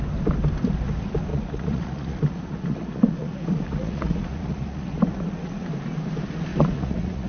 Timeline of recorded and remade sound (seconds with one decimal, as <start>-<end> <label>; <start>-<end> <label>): 0.0-1.3 recorded; 1.3-5.7 remade; 5.7-6.5 recorded; 6.5-7.3 remade